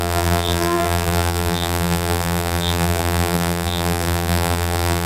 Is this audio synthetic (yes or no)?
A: yes